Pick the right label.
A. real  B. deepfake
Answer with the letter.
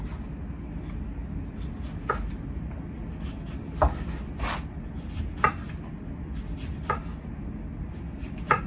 A